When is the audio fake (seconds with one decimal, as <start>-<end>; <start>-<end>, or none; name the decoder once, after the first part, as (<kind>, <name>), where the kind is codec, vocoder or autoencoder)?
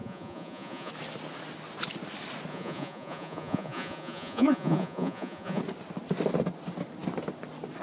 0.0-0.9 (vocoder, Vocos); 2.5-5.6